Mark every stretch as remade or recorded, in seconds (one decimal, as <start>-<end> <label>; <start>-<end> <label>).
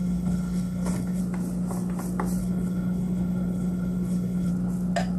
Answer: 0.0-1.2 remade; 1.2-2.4 recorded; 2.4-4.5 remade; 4.5-5.2 recorded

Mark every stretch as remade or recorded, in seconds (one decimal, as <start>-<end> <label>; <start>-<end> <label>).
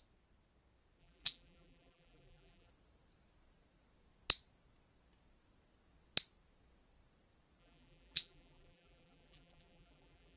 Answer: 0.0-1.0 recorded; 1.0-2.7 remade; 2.7-7.6 recorded; 7.6-10.4 remade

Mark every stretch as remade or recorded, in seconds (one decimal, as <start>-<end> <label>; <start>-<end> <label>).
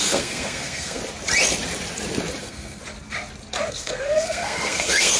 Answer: 0.0-1.0 remade; 1.0-2.4 recorded; 2.4-2.8 remade; 2.8-3.7 recorded; 3.7-5.2 remade